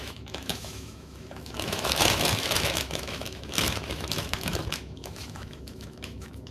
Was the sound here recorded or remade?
remade